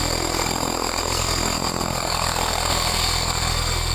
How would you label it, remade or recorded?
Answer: remade